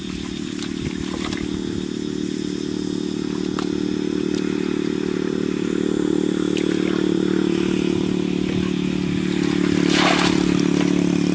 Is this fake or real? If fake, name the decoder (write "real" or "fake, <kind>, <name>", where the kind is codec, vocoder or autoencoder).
real